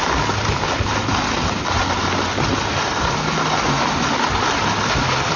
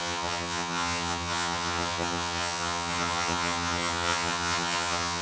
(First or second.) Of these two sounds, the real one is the first